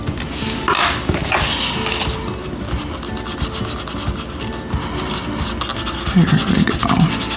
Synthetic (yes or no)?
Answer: no